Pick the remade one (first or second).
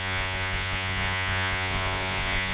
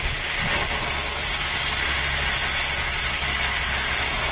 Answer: first